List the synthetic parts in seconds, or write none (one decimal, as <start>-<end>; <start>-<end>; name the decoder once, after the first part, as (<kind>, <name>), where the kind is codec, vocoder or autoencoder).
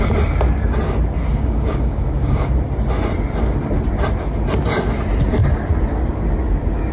1.3-2.5 (codec, DAC)